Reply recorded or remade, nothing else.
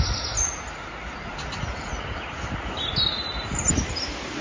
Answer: recorded